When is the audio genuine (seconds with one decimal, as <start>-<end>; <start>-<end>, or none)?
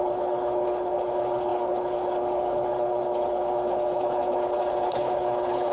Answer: none